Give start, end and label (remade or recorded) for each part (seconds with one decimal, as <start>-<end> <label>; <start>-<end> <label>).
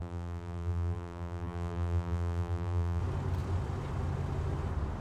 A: 0.0-3.0 remade; 3.0-5.0 recorded